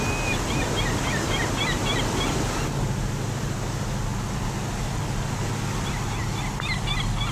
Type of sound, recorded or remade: recorded